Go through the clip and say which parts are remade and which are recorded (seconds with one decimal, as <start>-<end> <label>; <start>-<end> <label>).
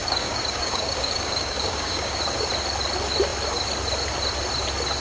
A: 0.0-2.2 remade; 2.2-5.0 recorded